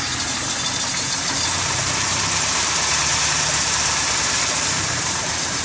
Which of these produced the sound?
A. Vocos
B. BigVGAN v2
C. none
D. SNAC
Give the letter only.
B